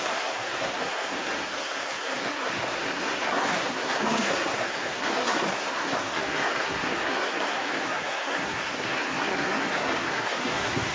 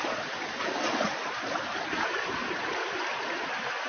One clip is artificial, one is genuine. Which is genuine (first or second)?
second